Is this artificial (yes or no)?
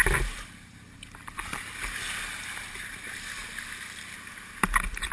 no